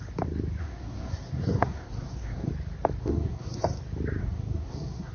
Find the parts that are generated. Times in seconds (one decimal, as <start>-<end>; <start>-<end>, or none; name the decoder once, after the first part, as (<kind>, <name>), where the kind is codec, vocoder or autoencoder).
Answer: 0.6-2.5 (codec, SNAC); 3.0-3.8; 4.2-5.1